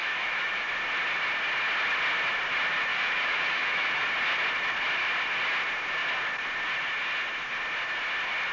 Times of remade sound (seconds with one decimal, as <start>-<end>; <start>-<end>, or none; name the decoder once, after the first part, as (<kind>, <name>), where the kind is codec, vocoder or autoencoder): 0.0-0.7 (autoencoder, DAC-VAE); 2.9-4.0